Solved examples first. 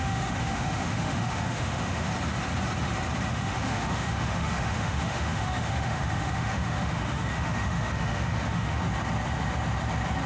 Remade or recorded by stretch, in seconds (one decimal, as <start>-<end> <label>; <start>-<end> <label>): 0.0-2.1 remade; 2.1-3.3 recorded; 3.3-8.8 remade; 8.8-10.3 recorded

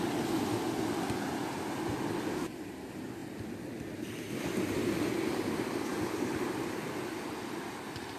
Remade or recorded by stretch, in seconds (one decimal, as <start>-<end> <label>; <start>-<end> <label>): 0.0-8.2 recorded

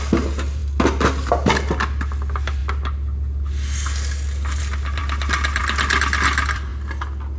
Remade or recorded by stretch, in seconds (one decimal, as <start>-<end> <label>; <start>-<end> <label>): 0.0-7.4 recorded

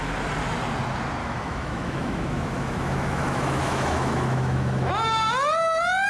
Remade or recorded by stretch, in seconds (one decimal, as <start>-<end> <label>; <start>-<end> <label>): 0.0-1.2 recorded; 1.2-4.9 remade; 4.9-6.1 recorded

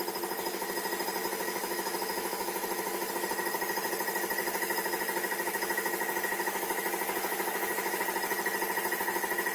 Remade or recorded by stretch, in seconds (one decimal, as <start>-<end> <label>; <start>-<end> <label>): 0.0-1.2 recorded; 1.2-3.1 remade; 3.1-4.4 recorded; 4.4-8.0 remade; 8.0-9.5 recorded

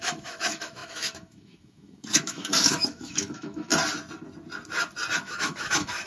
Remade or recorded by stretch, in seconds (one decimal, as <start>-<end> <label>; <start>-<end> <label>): 0.0-3.7 remade; 3.7-5.2 recorded; 5.2-6.1 remade